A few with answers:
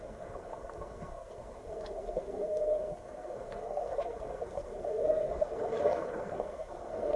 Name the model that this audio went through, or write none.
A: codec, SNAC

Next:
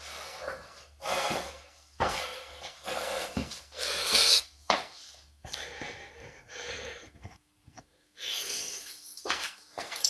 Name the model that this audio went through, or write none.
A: codec, SNAC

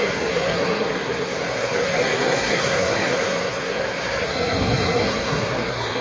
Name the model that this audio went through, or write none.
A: codec, SNAC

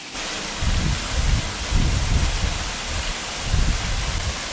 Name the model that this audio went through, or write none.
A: none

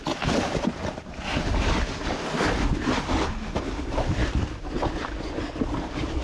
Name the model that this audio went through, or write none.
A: none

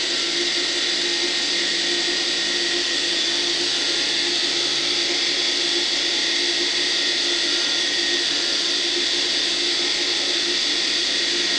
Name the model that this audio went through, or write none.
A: none